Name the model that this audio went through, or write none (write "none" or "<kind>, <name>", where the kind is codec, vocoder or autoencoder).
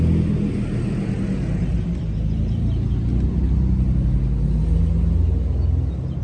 none